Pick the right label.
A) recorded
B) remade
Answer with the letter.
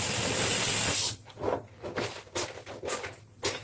A